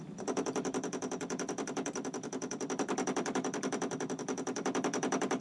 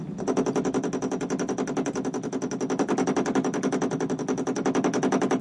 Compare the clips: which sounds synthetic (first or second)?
first